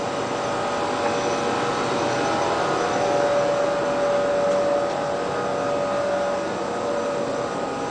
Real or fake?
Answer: real